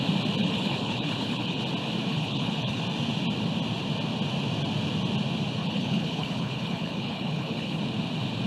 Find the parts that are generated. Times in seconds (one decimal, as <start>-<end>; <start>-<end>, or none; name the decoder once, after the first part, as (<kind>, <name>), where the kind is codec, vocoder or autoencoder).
0.4-1.6 (codec, HILCodec); 2.1-2.8; 5.6-7.8